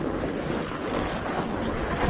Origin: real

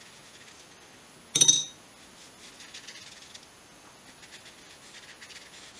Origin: real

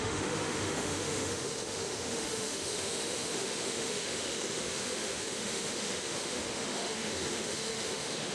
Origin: fake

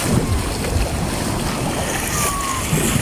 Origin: real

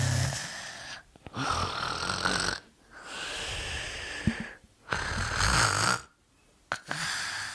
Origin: real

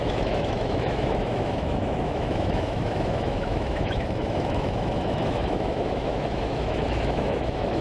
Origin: fake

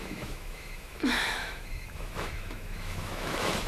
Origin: fake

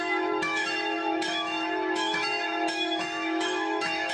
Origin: fake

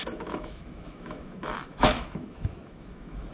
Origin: fake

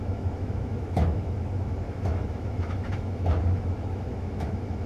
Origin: fake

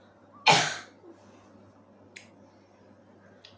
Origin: real